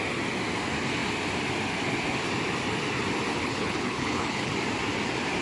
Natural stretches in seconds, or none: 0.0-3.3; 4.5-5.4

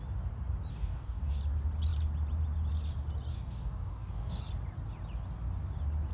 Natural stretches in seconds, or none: 0.0-0.7; 1.4-3.3; 4.4-6.1